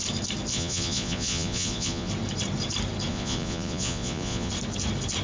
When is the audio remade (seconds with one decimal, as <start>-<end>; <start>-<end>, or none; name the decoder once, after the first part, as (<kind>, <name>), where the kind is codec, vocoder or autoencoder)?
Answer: 0.5-2.1 (vocoder, Vocos); 3.1-4.5